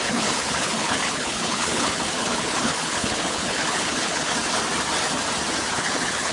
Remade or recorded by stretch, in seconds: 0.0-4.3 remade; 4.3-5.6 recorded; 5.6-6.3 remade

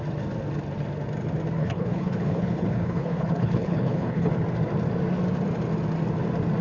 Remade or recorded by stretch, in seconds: 0.0-1.6 recorded; 1.6-4.3 remade; 4.3-6.6 recorded

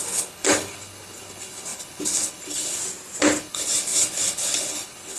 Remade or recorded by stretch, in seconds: 0.0-2.8 remade; 2.8-3.4 recorded; 3.4-5.2 remade

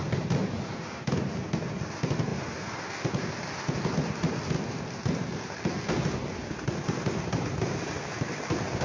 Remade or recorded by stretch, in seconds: 0.0-8.8 recorded

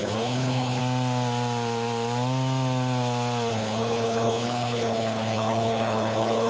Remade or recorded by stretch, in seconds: 0.0-0.8 remade; 0.8-3.5 recorded; 3.5-6.5 remade

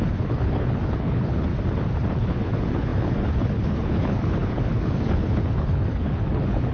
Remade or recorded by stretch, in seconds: 0.0-1.5 remade; 1.5-2.1 recorded; 2.1-6.7 remade

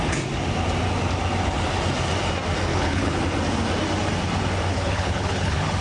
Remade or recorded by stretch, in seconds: 0.0-2.7 recorded; 2.7-3.2 remade; 3.2-4.7 recorded; 4.7-5.8 remade

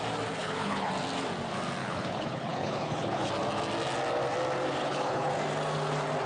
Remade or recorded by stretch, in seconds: 0.0-0.4 recorded; 0.4-0.9 remade; 0.9-1.8 recorded; 1.8-3.3 remade; 3.3-4.8 recorded; 4.8-5.3 remade; 5.3-6.3 recorded